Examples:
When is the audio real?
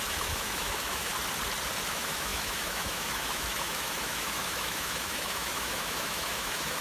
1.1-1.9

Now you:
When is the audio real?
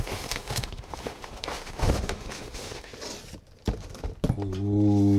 2.9-5.2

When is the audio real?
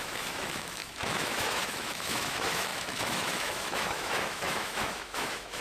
none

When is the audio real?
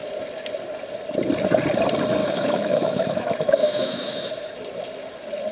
0.0-2.2; 4.3-5.5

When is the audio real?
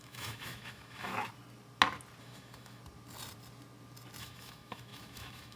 1.1-2.2; 2.8-4.2